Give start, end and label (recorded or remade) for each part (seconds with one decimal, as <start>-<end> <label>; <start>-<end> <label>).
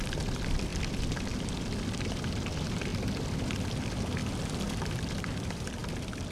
0.0-0.7 remade; 0.7-1.5 recorded; 1.5-5.8 remade; 5.8-6.3 recorded